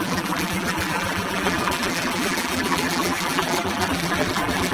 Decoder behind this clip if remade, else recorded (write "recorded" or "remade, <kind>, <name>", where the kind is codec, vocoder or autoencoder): remade, vocoder, BigVGAN v2